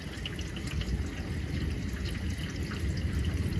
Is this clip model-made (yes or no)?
no